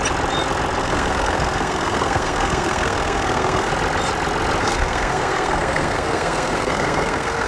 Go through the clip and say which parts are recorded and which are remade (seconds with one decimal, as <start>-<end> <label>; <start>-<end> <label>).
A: 0.0-0.8 recorded; 0.8-3.7 remade; 3.7-4.6 recorded; 4.6-7.5 remade